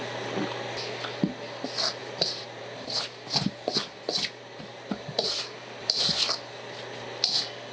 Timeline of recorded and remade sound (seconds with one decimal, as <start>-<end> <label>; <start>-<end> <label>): 0.0-2.0 recorded; 2.0-6.1 remade; 6.1-7.7 recorded